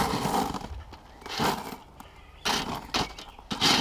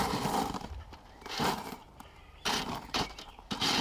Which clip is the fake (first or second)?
second